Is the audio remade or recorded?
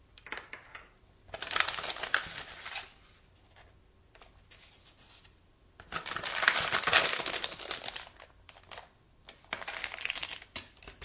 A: recorded